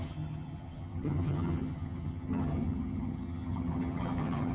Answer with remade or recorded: remade